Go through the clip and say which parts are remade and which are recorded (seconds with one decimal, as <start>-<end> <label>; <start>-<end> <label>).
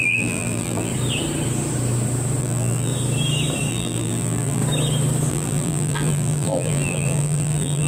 0.0-0.9 remade; 0.9-2.4 recorded; 2.4-2.9 remade; 2.9-3.7 recorded; 3.7-4.6 remade; 4.6-5.3 recorded; 5.3-7.9 remade